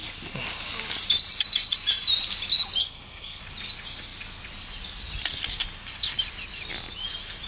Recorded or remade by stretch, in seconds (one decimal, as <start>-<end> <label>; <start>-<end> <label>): 0.0-2.8 recorded; 2.8-3.4 remade; 3.4-7.5 recorded